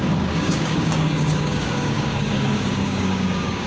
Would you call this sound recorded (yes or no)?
no